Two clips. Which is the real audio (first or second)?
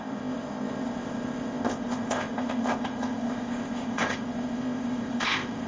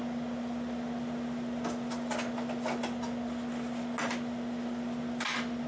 second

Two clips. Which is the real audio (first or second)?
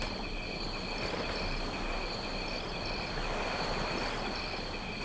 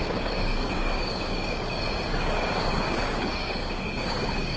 first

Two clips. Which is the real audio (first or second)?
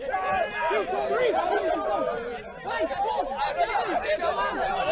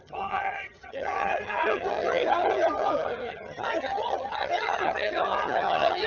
first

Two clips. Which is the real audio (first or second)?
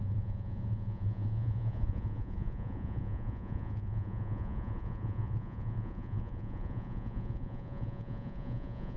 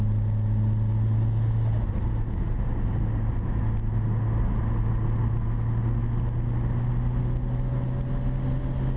second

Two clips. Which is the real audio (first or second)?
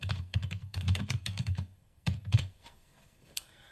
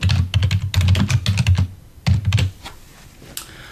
second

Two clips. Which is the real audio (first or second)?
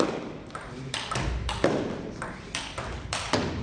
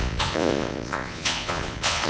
first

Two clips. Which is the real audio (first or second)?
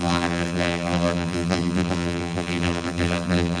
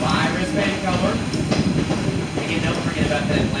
second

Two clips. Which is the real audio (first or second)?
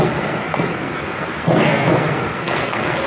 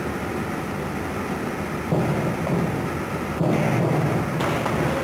second